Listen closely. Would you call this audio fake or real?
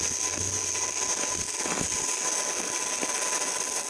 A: real